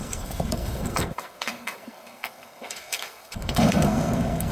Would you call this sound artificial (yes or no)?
yes